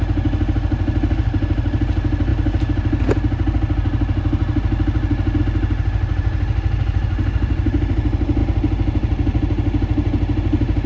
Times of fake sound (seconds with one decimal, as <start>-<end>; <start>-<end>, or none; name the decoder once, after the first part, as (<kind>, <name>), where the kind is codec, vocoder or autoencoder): none